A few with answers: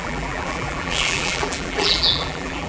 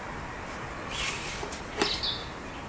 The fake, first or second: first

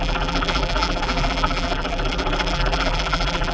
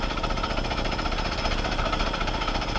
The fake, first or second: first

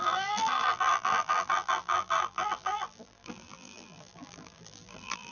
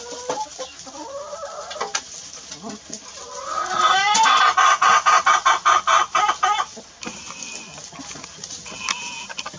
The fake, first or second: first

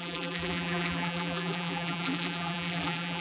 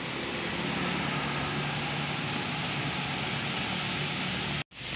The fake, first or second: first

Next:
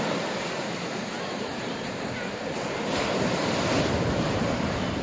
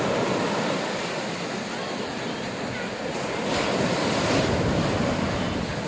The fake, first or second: first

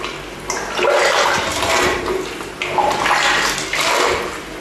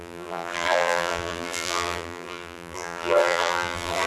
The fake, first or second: second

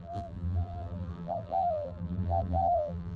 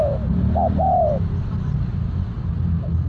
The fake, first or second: first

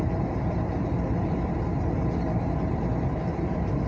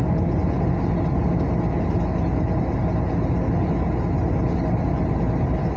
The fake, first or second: first